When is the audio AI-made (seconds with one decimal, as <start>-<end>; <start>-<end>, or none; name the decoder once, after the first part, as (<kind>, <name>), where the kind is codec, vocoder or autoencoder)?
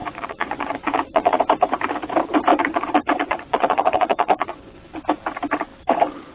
0.0-1.4 (vocoder, Vocos); 2.5-4.8